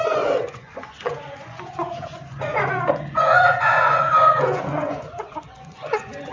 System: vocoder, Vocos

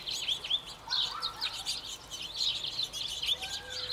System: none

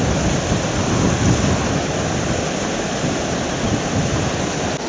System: none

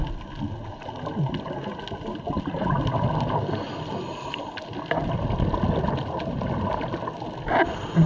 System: none